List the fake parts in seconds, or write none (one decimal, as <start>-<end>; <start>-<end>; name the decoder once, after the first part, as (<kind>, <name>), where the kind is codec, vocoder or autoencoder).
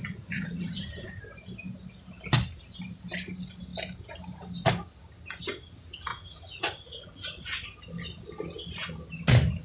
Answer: 0.0-1.2 (vocoder, Vocos); 6.1-7.4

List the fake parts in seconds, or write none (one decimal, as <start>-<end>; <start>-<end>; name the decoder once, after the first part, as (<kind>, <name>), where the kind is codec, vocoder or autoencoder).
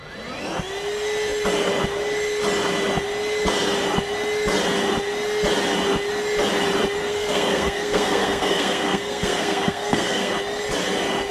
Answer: 7.0-10.3 (codec, SNAC)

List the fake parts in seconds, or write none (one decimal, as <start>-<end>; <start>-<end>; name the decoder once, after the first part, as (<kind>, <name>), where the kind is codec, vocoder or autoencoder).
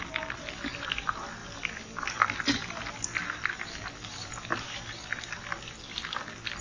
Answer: none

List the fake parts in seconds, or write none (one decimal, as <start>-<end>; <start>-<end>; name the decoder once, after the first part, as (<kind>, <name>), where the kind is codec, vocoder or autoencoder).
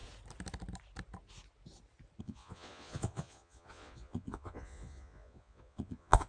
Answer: 2.2-6.3 (vocoder, Vocos)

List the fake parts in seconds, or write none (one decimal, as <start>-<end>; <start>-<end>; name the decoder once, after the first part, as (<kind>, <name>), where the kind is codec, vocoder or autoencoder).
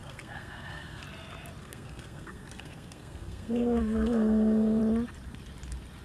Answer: 0.0-1.0 (codec, SNAC); 1.6-4.8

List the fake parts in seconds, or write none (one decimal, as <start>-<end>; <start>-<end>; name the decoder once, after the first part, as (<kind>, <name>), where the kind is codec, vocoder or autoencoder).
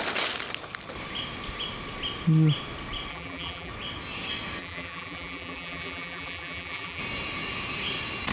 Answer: 3.1-3.7 (vocoder, BigVGAN v2); 4.6-7.0